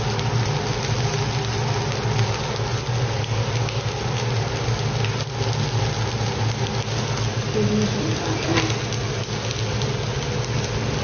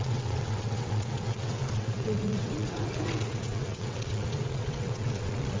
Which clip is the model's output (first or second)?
second